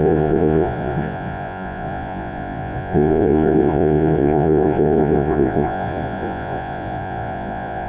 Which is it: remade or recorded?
remade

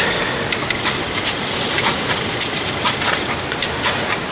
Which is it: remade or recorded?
recorded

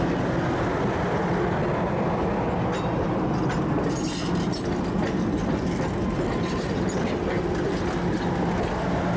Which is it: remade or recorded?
recorded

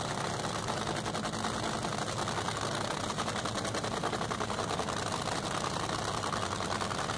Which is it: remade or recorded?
recorded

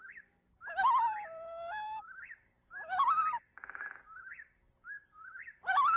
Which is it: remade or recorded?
remade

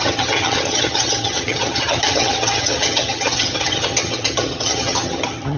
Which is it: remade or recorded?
remade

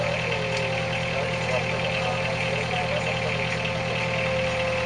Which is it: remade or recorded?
recorded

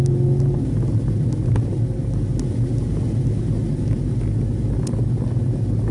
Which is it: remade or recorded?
recorded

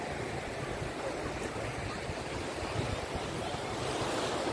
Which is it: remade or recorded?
recorded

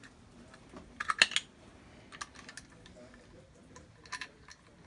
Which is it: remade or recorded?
recorded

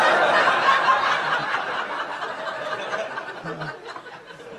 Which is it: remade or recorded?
recorded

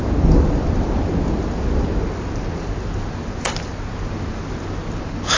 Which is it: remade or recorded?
recorded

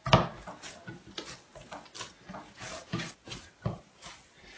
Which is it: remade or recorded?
recorded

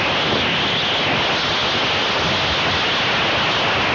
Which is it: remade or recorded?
recorded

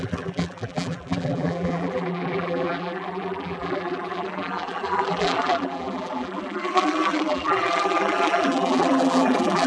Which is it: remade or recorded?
remade